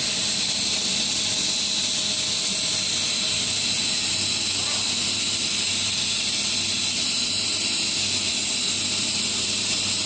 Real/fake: real